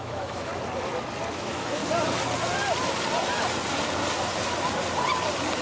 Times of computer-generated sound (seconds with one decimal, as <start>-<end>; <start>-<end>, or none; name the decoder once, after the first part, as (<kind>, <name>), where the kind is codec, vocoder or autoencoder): 0.0-0.5 (autoencoder, DAC-VAE); 1.3-1.8

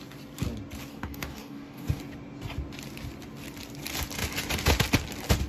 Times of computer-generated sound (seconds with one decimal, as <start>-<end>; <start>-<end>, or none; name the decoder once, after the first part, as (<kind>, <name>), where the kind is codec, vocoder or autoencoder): 0.9-2.0 (codec, DAC)

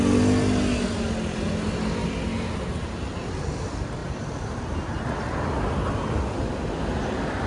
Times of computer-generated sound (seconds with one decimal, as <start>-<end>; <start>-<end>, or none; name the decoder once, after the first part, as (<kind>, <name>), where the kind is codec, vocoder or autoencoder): none

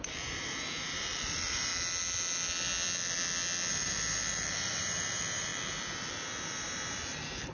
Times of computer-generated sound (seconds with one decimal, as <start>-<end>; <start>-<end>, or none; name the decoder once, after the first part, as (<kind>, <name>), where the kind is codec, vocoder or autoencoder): 0.0-1.7 (vocoder, BigVGAN v2); 3.7-7.5

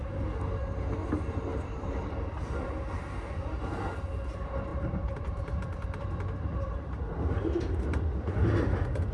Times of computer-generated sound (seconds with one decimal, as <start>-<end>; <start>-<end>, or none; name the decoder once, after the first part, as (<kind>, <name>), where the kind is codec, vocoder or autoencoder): 1.5-2.0 (vocoder, BigVGAN v2); 4.7-7.6